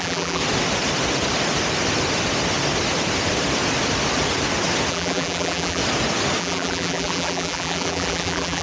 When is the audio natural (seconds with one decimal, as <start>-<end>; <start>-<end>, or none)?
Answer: 0.4-4.9; 5.8-6.4